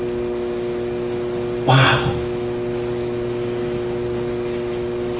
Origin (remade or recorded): recorded